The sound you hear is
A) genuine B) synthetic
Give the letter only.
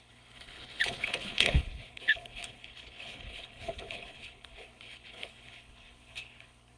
B